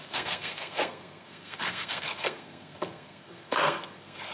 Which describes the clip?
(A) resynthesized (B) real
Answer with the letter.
A